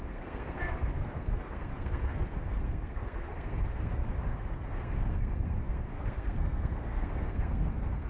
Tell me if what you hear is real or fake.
fake